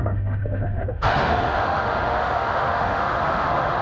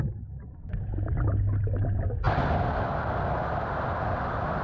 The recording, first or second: second